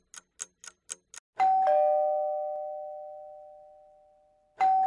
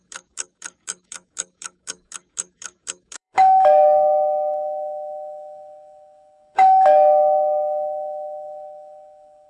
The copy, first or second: second